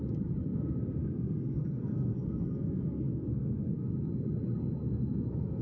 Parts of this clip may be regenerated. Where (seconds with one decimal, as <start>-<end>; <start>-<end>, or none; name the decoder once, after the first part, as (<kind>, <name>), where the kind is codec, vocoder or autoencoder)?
0.5-3.9 (codec, SNAC); 4.8-5.6